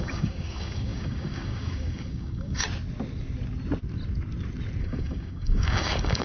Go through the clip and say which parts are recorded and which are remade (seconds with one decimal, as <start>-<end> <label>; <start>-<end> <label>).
0.0-2.6 remade; 2.6-4.8 recorded; 4.8-6.2 remade